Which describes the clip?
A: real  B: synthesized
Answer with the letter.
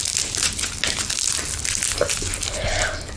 A